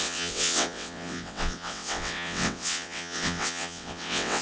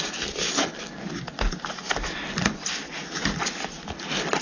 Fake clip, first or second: first